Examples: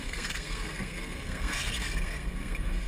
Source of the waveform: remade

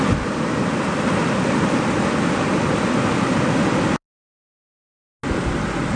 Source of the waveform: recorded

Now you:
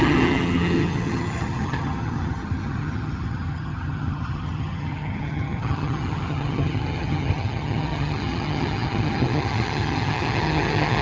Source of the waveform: remade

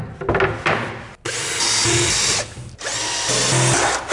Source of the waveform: recorded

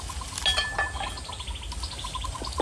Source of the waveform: recorded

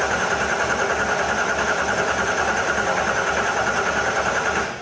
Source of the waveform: recorded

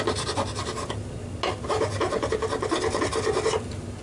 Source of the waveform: recorded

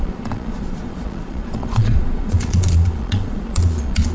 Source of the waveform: remade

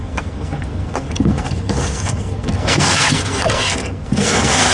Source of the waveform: remade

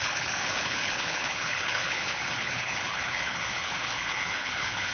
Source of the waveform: remade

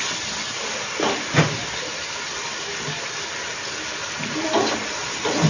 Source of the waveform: recorded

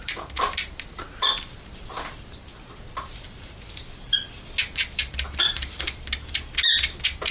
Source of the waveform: recorded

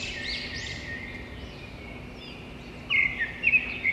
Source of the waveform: recorded